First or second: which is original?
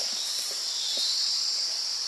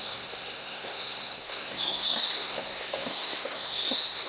first